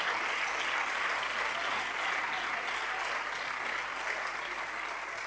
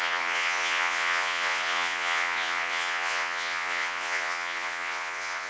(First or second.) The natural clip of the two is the first